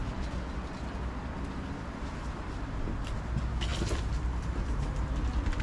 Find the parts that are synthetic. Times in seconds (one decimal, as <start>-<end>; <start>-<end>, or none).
none